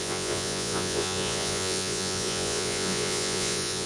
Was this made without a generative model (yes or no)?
no